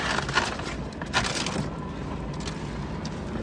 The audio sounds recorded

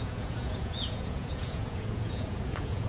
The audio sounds remade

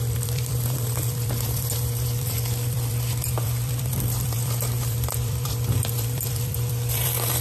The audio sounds remade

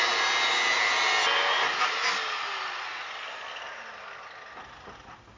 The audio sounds recorded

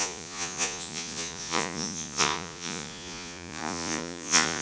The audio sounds remade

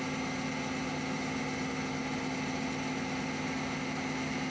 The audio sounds recorded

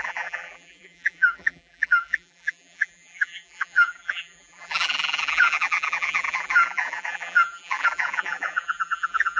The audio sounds remade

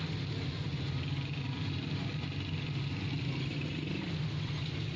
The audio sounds recorded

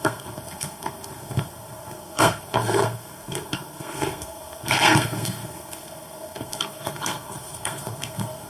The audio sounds remade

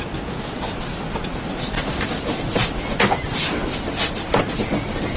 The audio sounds recorded